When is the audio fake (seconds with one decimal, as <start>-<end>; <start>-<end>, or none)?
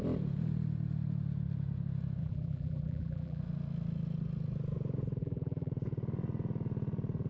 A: 2.2-3.4; 5.2-5.7